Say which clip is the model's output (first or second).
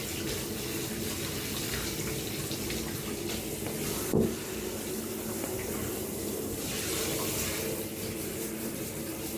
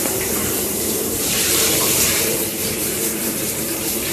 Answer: second